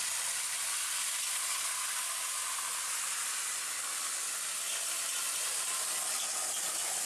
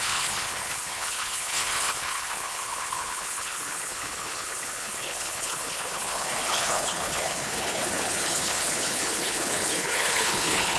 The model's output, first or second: second